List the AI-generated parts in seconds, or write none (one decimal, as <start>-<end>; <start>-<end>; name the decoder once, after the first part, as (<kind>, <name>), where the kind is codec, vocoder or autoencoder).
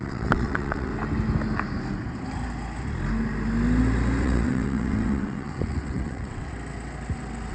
0.0-0.9 (vocoder, WaveNeXt); 4.2-6.5